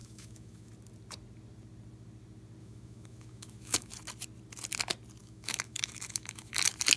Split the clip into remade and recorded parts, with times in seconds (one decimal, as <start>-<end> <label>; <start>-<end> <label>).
0.0-0.7 remade; 0.7-2.6 recorded; 2.6-3.9 remade; 3.9-5.2 recorded; 5.2-6.5 remade; 6.5-7.0 recorded